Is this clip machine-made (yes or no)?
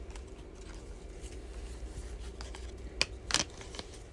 no